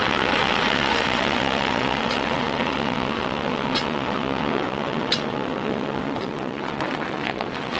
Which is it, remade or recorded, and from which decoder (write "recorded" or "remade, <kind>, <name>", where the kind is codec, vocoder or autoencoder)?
remade, vocoder, WaveNeXt